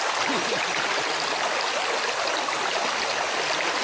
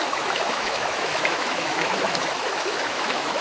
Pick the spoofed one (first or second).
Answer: second